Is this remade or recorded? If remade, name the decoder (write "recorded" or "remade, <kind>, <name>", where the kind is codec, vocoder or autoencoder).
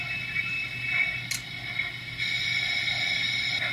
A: recorded